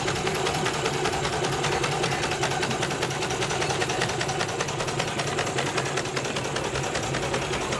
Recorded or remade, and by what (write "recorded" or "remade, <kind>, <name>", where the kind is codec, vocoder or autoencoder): recorded